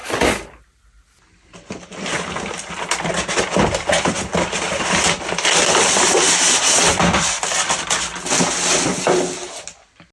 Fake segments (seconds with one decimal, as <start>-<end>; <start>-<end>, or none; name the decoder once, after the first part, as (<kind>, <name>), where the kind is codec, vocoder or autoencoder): none